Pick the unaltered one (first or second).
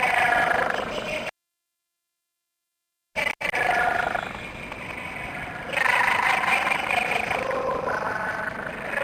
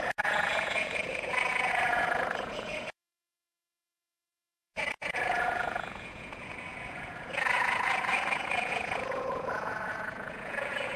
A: first